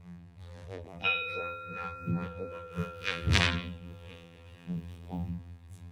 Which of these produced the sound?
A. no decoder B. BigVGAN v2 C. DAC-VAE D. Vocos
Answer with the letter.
B